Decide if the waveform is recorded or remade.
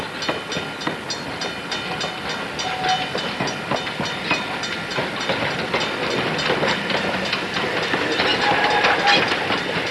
recorded